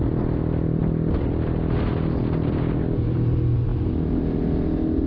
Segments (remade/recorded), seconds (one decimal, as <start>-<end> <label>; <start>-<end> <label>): 0.0-5.1 recorded